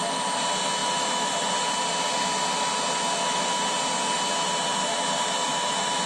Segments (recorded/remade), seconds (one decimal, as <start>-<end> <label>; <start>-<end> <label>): 0.0-6.1 recorded